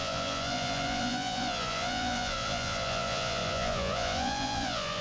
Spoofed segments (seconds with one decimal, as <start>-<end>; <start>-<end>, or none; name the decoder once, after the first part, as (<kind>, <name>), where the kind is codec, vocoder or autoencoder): 0.0-5.0 (vocoder, Vocos)